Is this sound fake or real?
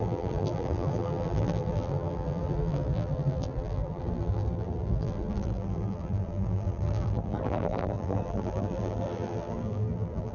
fake